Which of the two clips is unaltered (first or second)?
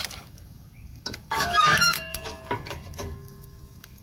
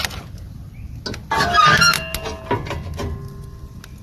second